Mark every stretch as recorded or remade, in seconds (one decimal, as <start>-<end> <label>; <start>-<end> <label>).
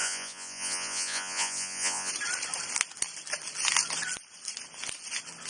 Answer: 0.0-2.1 remade; 2.1-5.5 recorded